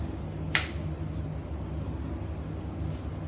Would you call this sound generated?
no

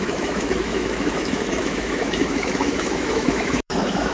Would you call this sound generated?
yes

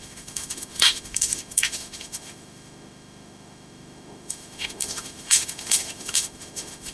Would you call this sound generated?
yes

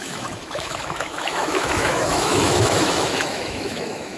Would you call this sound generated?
yes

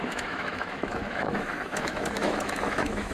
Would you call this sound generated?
yes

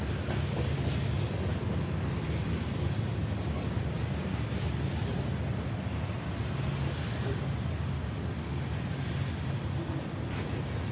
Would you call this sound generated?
no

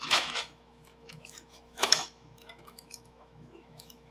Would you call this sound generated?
yes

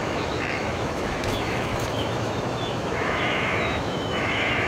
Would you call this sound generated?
yes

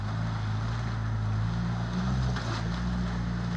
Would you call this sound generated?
no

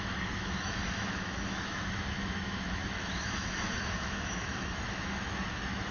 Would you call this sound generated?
yes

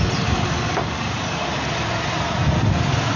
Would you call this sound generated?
no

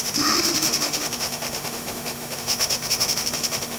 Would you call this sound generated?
yes